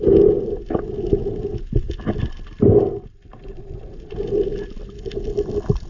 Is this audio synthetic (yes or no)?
no